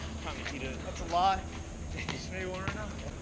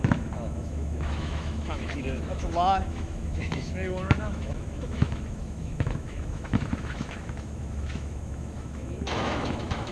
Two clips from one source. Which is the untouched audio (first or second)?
first